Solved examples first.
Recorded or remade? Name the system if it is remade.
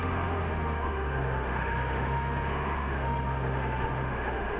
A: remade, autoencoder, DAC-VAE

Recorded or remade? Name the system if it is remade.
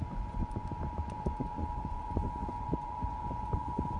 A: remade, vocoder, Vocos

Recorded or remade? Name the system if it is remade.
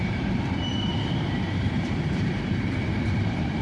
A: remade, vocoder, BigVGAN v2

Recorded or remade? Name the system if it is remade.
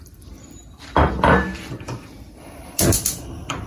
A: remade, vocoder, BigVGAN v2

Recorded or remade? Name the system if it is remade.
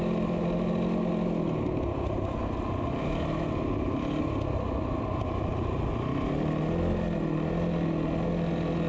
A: recorded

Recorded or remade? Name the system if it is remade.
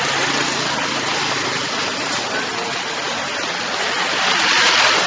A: recorded